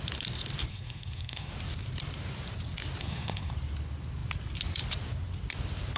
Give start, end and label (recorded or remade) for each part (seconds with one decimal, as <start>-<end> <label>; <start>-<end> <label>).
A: 0.0-0.7 recorded; 0.7-1.5 remade; 1.5-3.0 recorded; 3.0-3.5 remade; 3.5-6.0 recorded